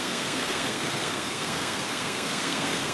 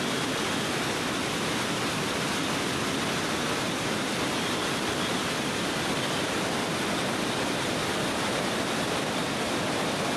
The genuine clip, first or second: second